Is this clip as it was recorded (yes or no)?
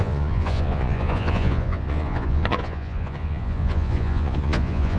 no